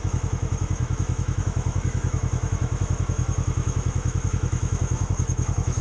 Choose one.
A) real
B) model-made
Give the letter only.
B